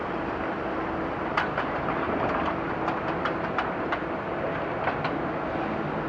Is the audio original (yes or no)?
no